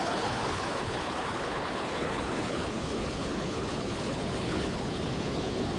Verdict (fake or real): fake